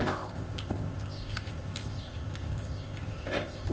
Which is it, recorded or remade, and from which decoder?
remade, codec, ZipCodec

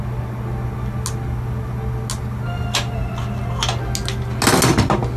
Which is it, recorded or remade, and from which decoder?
recorded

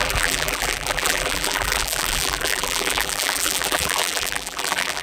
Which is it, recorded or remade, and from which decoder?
remade, vocoder, BigVGAN v2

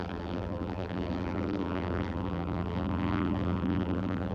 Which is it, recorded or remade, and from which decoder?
remade, vocoder, BigVGAN v2